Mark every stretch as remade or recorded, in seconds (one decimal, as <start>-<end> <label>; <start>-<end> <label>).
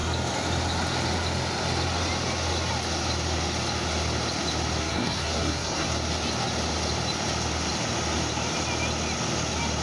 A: 0.0-4.8 recorded; 4.8-5.9 remade; 5.9-9.8 recorded